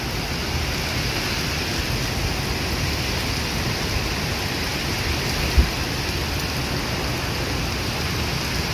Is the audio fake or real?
real